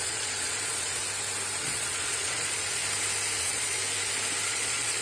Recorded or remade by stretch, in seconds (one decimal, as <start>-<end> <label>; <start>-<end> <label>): 0.0-1.0 remade; 1.0-1.6 recorded; 1.6-2.8 remade; 2.8-3.4 recorded; 3.4-3.8 remade; 3.8-4.5 recorded; 4.5-5.0 remade